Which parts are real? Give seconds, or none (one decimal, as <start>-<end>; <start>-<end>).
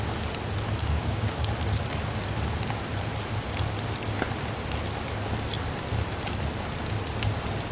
0.0-0.8; 1.5-7.7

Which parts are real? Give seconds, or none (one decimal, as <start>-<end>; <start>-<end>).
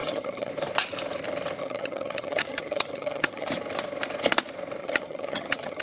0.5-1.6; 3.5-4.8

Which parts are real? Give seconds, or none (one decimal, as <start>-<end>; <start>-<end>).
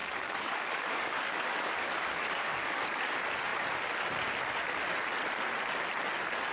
3.0-6.5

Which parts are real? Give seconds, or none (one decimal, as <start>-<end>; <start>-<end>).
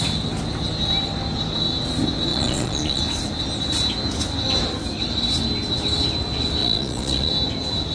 0.0-2.3; 3.0-6.6; 7.3-7.9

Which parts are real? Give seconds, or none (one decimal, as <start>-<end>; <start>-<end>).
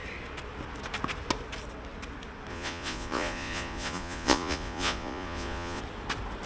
0.0-2.5; 5.8-6.5